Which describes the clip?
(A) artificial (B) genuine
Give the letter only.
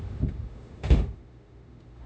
A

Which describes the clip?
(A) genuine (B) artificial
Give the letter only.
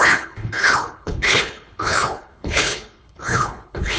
B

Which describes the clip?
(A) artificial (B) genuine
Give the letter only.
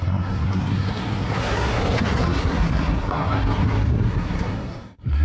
A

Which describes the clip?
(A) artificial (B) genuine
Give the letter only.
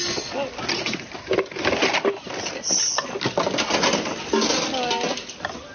B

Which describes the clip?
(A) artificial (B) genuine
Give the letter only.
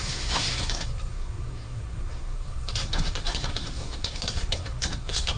A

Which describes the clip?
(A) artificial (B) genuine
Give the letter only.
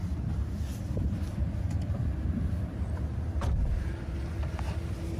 B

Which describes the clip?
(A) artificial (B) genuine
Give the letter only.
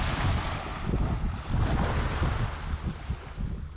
B